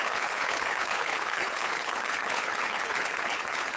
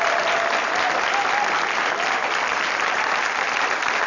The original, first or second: second